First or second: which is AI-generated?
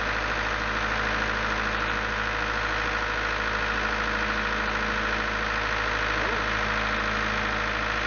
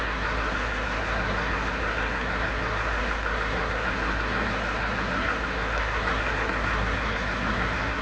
second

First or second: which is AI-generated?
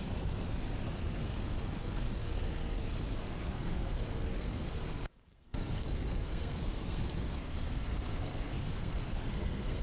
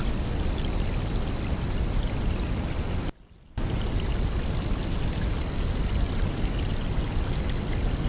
first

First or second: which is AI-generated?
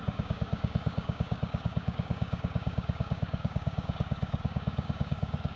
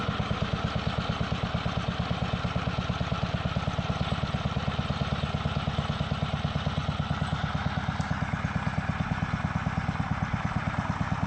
first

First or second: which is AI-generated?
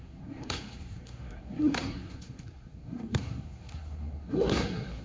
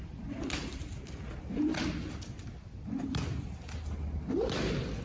first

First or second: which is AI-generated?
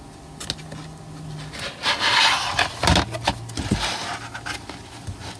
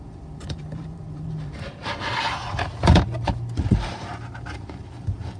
second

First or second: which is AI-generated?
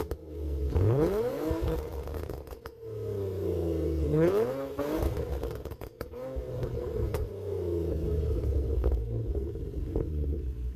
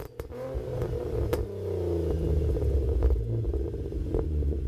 first